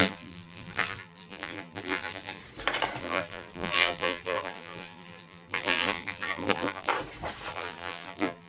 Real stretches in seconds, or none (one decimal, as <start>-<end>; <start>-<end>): 2.4-3.0; 6.9-7.5